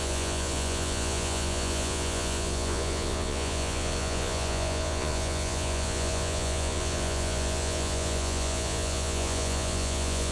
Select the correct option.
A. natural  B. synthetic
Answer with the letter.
B